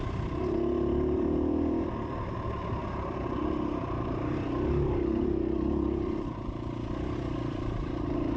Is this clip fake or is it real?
fake